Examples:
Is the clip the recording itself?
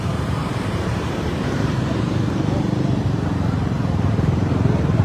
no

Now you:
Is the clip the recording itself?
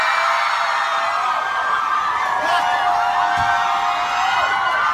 yes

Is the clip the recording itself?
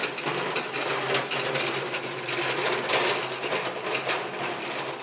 yes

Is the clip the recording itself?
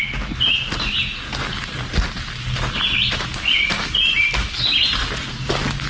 yes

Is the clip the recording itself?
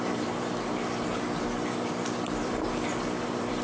no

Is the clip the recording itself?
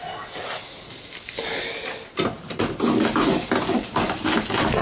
yes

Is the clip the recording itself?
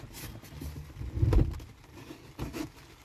yes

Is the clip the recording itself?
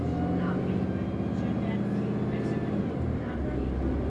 yes